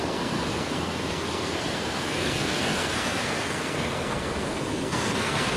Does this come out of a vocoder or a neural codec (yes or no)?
yes